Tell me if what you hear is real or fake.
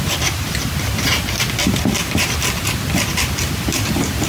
fake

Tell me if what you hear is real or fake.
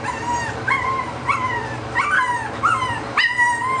fake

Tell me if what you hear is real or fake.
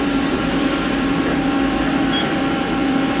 fake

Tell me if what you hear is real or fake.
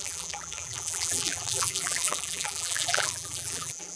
fake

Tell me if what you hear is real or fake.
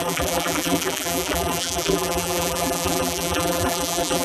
fake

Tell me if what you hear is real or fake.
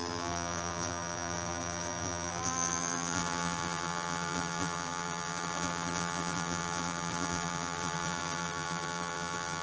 fake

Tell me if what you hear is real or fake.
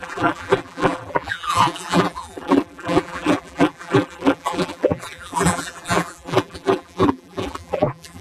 fake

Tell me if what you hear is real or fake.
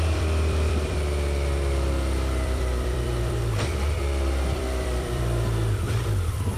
fake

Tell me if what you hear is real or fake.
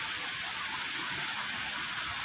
real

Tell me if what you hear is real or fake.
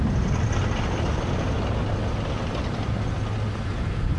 real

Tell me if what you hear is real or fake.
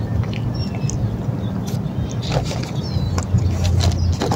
real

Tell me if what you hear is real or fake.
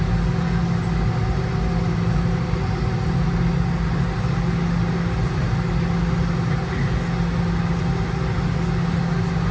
real